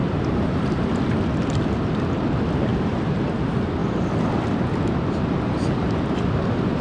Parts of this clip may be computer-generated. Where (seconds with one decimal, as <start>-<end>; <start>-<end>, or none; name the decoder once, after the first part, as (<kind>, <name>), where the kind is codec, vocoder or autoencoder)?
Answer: 0.0-0.9 (vocoder, BigVGAN v2); 2.7-3.2